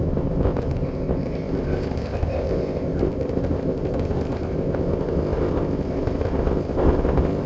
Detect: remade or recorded remade